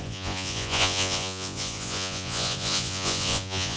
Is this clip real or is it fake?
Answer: fake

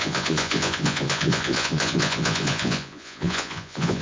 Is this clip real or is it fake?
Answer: fake